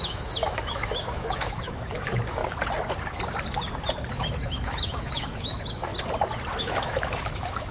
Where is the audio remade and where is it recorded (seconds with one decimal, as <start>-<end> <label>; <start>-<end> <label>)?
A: 0.0-2.4 remade; 2.4-4.1 recorded; 4.1-5.9 remade; 5.9-6.5 recorded; 6.5-7.7 remade